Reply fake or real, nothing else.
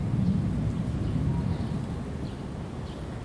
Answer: real